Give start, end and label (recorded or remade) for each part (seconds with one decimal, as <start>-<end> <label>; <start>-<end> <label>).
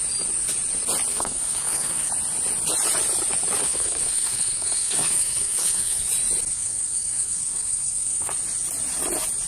0.0-1.1 recorded; 1.1-2.1 remade; 2.1-3.6 recorded; 3.6-6.1 remade; 6.1-6.5 recorded; 6.5-8.3 remade; 8.3-9.5 recorded